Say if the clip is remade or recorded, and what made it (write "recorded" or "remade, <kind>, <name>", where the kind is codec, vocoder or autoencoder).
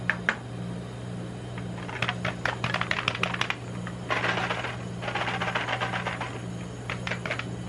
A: recorded